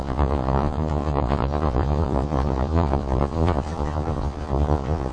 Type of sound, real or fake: fake